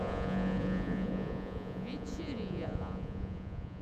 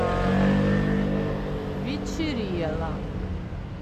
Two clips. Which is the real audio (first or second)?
second